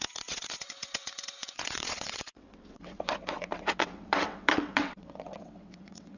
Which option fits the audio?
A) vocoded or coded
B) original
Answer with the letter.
A